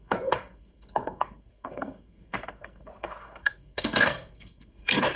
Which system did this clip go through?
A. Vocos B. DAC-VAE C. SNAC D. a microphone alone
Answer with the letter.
C